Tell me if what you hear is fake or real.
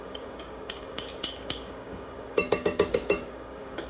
fake